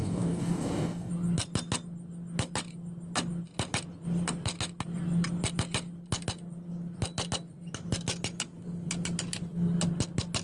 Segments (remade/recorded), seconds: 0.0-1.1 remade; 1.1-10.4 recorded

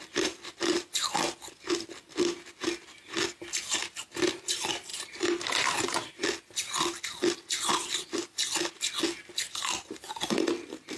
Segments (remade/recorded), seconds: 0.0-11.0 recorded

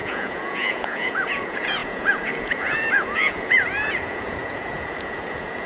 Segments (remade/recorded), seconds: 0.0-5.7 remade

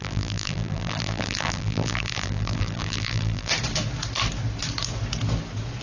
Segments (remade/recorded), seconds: 0.0-3.5 remade; 3.5-5.8 recorded